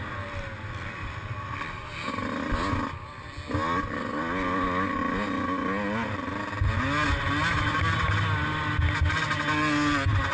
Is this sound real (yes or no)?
yes